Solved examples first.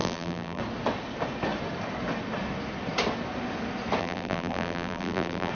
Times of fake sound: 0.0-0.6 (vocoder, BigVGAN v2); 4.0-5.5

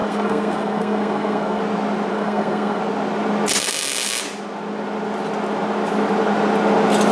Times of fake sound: 0.0-1.6 (codec, SNAC); 2.1-2.8

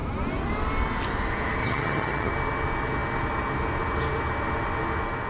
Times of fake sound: 1.6-2.3 (vocoder, HiFi-GAN)

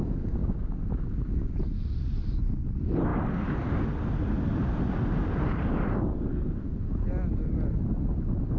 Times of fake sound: none

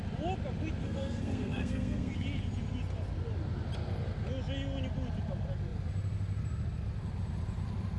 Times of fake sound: 0.8-2.1 (codec, SNAC)